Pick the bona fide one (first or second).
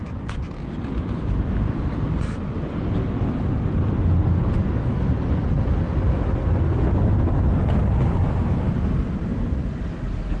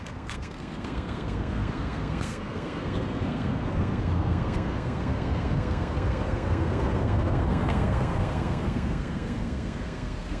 first